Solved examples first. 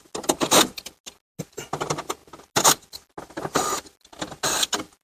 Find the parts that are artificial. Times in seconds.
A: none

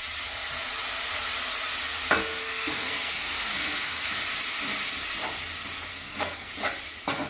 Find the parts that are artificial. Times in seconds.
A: 2.2-4.2 (codec, SNAC); 5.9-6.5

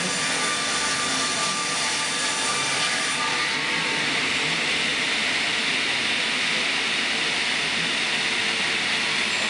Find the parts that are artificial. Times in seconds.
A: 2.7-3.4 (vocoder, BigVGAN v2); 4.9-5.5

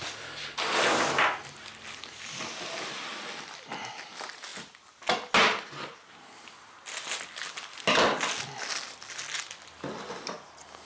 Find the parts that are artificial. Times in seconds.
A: none

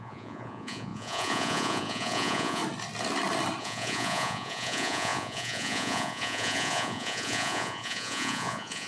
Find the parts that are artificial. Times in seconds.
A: 0.0-2.6 (vocoder, Vocos); 3.6-8.9

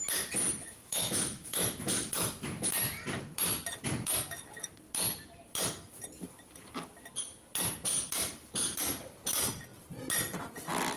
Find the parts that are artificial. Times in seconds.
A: 0.6-2.7 (autoencoder, DAC-VAE)

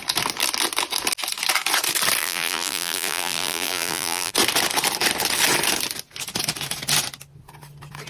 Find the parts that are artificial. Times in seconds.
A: 2.2-4.3 (vocoder, BigVGAN v2)